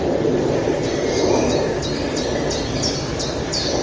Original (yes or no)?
yes